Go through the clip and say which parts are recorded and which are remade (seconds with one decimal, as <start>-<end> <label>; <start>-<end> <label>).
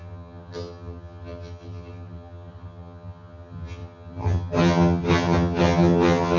0.0-6.4 remade